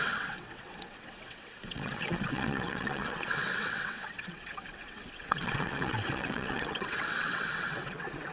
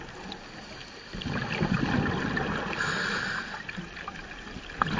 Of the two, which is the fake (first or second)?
first